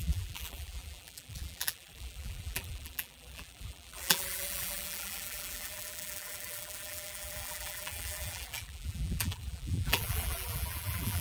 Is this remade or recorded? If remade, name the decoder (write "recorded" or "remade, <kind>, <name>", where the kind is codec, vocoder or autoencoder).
remade, vocoder, BigVGAN v2